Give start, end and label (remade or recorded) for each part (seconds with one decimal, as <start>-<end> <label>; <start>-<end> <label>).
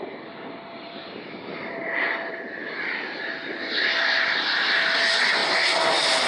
0.0-5.4 remade; 5.4-6.3 recorded